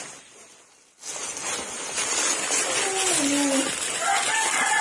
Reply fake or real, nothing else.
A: real